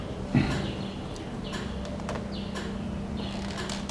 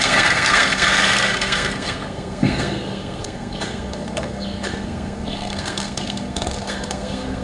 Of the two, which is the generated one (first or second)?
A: second